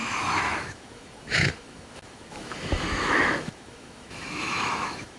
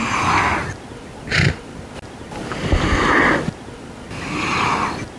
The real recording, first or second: second